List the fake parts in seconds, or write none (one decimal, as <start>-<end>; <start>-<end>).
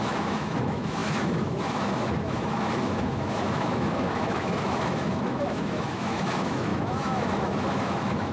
0.0-8.3